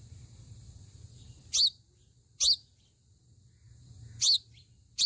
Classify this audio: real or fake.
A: real